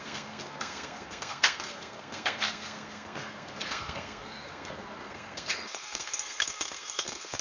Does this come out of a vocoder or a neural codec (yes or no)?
yes